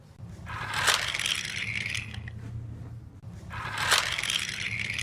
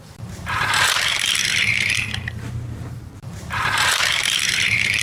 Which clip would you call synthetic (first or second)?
second